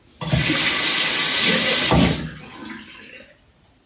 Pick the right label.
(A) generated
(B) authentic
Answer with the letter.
B